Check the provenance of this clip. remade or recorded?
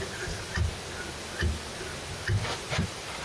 recorded